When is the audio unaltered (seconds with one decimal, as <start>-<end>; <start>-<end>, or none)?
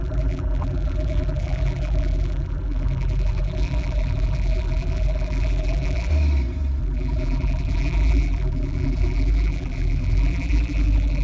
6.1-6.8